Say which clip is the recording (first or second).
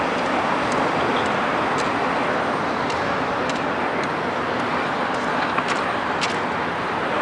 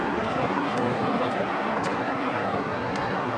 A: first